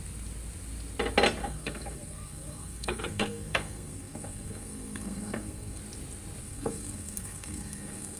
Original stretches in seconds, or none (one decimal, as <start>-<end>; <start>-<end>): 0.0-1.4; 5.8-6.4